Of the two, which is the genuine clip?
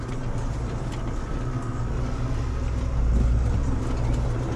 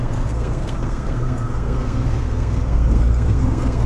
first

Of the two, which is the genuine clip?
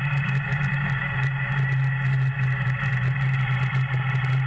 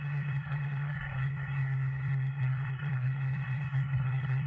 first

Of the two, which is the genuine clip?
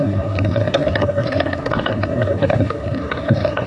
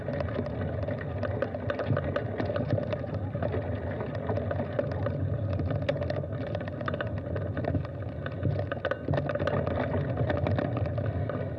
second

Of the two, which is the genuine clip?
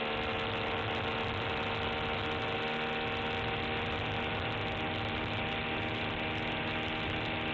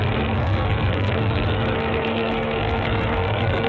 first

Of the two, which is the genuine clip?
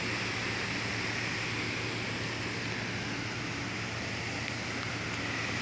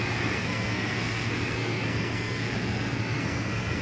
first